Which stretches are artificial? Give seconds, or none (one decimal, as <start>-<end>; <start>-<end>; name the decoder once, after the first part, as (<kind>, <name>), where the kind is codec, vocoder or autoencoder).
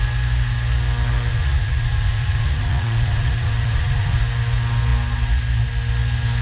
1.3-4.2 (vocoder, Vocos)